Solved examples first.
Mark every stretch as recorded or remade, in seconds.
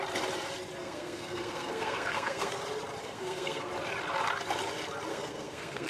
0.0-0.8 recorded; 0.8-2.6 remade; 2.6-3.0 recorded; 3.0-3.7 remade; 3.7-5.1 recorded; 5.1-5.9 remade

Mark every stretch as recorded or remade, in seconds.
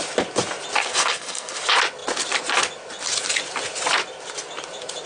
0.0-0.8 recorded; 0.8-1.6 remade; 1.6-5.1 recorded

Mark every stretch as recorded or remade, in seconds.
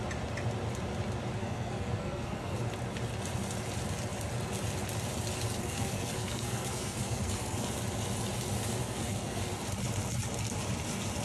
0.0-1.4 recorded; 1.4-2.6 remade; 2.6-5.6 recorded; 5.6-7.7 remade; 7.7-8.8 recorded; 8.8-9.4 remade; 9.4-11.2 recorded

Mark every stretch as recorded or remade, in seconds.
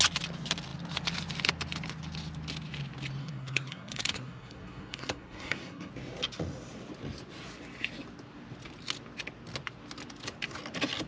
0.0-3.2 recorded; 3.2-5.9 remade; 5.9-11.1 recorded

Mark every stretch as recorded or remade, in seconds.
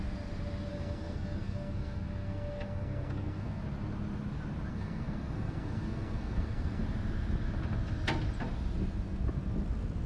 0.0-0.7 recorded; 0.7-3.6 remade; 3.6-4.7 recorded; 4.7-6.8 remade; 6.8-10.1 recorded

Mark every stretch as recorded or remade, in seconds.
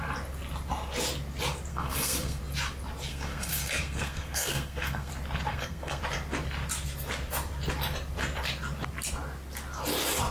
0.0-1.7 recorded; 1.7-2.4 remade; 2.4-3.1 recorded; 3.1-5.1 remade; 5.1-5.5 recorded; 5.5-6.0 remade; 6.0-10.3 recorded